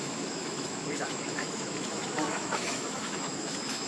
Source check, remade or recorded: remade